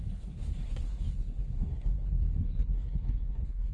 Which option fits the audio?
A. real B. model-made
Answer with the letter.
B